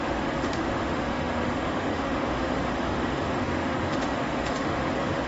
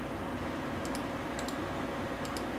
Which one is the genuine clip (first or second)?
second